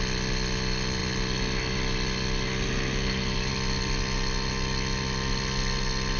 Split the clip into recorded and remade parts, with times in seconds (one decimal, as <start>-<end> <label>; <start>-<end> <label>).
0.0-6.2 recorded